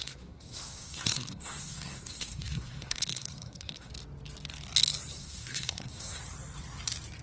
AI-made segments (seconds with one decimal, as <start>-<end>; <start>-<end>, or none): 0.0-3.9; 5.2-6.2